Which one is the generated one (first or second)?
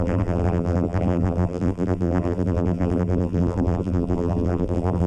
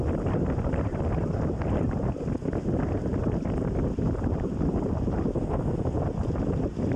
first